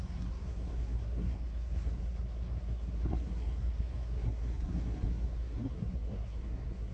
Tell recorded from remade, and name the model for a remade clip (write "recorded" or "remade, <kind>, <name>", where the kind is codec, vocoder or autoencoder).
remade, codec, SNAC